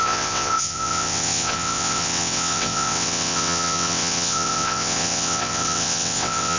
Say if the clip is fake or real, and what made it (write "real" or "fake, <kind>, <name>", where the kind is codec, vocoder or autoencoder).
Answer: fake, vocoder, WaveNeXt